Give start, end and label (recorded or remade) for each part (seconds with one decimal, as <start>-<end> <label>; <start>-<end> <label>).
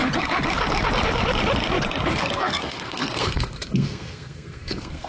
0.0-2.1 recorded; 2.1-5.1 remade